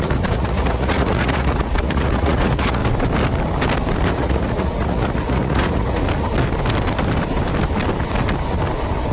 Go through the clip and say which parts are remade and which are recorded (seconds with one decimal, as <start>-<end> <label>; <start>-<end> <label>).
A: 0.0-2.8 remade; 2.8-4.1 recorded; 4.1-6.0 remade; 6.0-9.1 recorded